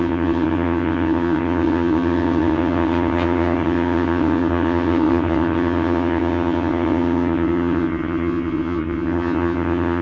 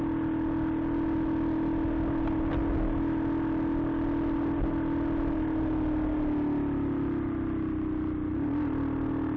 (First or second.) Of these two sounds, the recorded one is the second